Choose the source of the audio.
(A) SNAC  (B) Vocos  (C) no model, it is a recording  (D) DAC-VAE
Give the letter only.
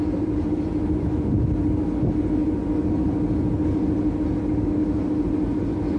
C